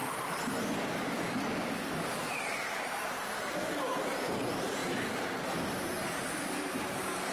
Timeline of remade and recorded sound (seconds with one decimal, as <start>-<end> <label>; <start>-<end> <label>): 0.0-2.2 recorded; 2.2-4.8 remade; 4.8-5.7 recorded; 5.7-7.3 remade